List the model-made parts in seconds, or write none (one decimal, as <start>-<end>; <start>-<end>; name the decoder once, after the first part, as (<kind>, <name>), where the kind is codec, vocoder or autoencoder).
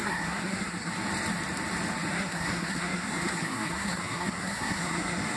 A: 0.0-0.9 (codec, SNAC); 2.1-5.4